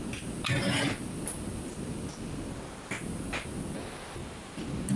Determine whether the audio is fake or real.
real